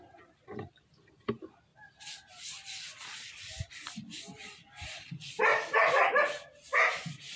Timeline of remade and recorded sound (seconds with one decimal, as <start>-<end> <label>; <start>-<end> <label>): 0.0-1.7 recorded; 1.7-6.1 remade; 6.1-7.4 recorded

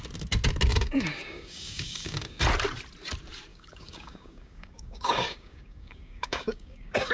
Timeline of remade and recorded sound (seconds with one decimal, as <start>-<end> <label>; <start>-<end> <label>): 0.0-0.7 recorded; 0.7-2.4 remade; 2.4-3.5 recorded; 3.5-7.1 remade